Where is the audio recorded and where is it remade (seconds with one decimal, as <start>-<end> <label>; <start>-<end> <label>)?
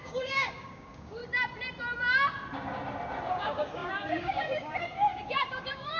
0.0-1.2 remade; 1.2-3.3 recorded; 3.3-6.0 remade